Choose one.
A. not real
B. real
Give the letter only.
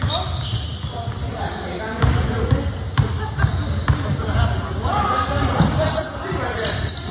B